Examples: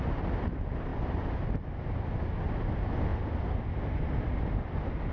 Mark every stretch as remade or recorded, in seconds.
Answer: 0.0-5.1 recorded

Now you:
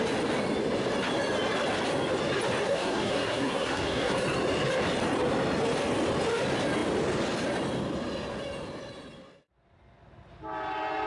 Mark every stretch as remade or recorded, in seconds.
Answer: 0.0-2.6 recorded; 2.6-4.2 remade; 4.2-11.1 recorded

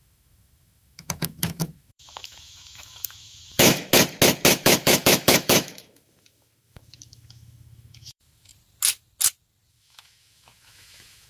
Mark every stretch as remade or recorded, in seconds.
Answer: 0.0-3.9 remade; 3.9-4.5 recorded; 4.5-8.5 remade; 8.5-9.7 recorded; 9.7-11.3 remade

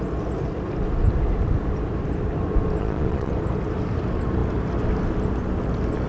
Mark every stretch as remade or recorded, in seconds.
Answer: 0.0-2.8 recorded; 2.8-3.3 remade; 3.3-6.1 recorded

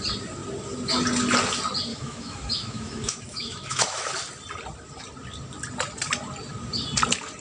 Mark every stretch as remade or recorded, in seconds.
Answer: 0.0-1.9 recorded; 1.9-4.1 remade; 4.1-7.4 recorded

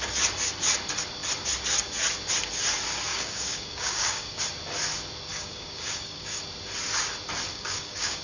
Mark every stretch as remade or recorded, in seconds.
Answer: 0.0-3.1 recorded; 3.1-4.4 remade; 4.4-5.3 recorded; 5.3-6.4 remade; 6.4-7.5 recorded; 7.5-8.2 remade

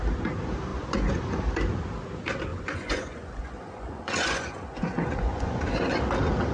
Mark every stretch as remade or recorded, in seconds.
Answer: 0.0-0.7 recorded; 0.7-1.2 remade; 1.2-2.5 recorded; 2.5-6.0 remade; 6.0-6.5 recorded